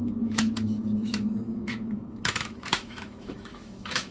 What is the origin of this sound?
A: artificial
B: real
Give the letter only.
A